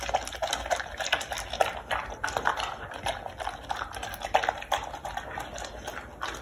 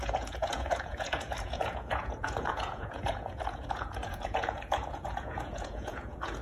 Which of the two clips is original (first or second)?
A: first